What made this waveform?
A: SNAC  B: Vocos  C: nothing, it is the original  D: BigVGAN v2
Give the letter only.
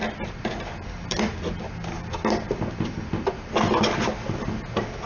C